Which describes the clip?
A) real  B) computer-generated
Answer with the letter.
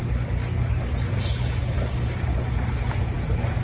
A